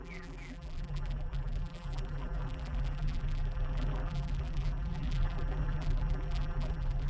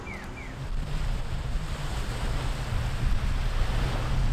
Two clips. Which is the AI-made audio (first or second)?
first